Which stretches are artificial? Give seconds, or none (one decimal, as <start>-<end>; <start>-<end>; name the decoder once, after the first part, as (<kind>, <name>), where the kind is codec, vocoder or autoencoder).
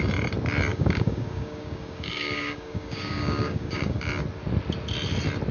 0.7-4.0 (codec, DAC)